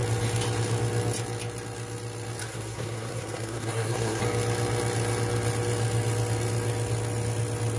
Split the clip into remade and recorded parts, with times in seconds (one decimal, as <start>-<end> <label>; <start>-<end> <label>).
0.0-2.4 recorded; 2.4-4.2 remade; 4.2-7.8 recorded